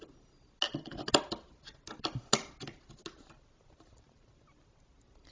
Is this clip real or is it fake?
real